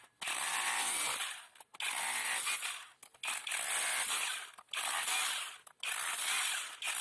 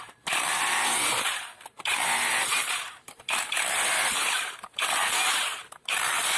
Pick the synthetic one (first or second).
second